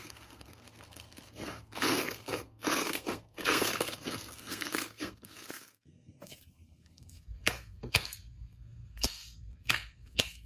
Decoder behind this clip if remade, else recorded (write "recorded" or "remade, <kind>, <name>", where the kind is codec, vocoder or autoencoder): remade, codec, SNAC